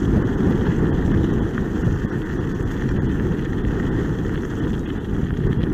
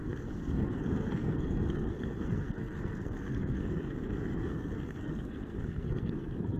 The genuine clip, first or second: first